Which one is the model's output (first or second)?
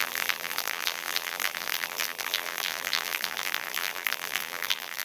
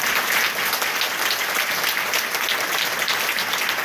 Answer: first